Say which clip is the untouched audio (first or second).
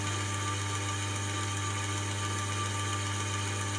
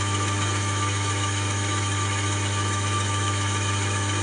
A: first